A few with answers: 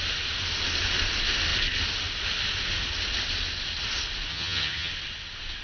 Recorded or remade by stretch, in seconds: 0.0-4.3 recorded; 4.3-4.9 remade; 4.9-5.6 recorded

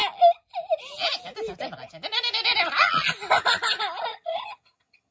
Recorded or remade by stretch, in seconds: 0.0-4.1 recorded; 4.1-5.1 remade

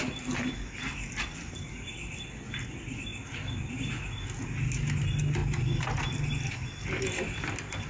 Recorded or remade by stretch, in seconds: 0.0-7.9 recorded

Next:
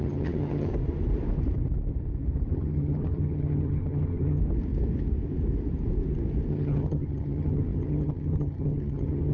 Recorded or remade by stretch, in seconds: 0.0-0.7 remade; 0.7-2.5 recorded; 2.5-4.4 remade; 4.4-6.5 recorded; 6.5-9.3 remade

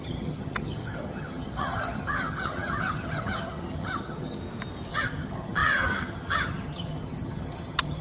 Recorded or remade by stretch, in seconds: 0.0-4.4 remade; 4.4-4.9 recorded; 4.9-8.0 remade

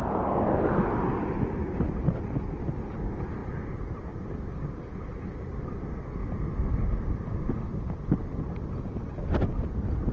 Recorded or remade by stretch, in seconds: 0.0-10.1 recorded